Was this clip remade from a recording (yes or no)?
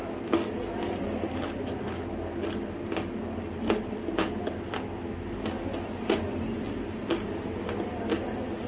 no